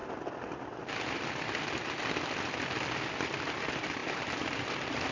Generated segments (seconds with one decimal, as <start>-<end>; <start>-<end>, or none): none